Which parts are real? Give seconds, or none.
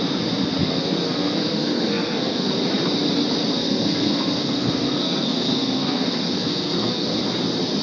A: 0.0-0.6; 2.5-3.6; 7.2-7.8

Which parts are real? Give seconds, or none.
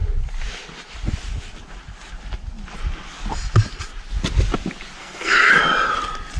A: 0.0-5.0; 5.5-6.4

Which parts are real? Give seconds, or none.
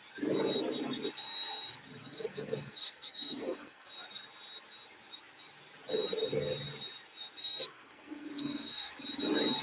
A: 0.0-2.0; 3.9-7.4; 8.9-9.6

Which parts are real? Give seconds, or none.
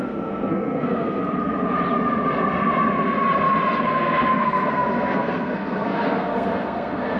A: 1.2-3.9